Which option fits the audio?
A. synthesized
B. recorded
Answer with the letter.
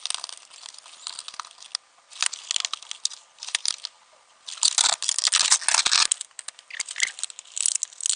B